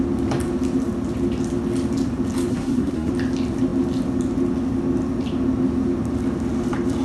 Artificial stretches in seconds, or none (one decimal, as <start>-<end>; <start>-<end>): 2.5-3.1